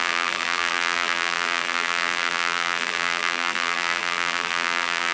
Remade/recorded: remade